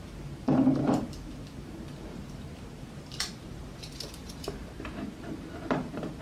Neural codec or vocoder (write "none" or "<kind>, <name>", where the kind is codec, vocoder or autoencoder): vocoder, BigVGAN v2